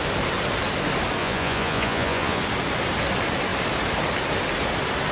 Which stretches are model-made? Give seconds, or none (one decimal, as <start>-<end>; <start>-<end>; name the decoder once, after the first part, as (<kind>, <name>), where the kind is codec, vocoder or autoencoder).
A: 1.2-2.4 (vocoder, Vocos)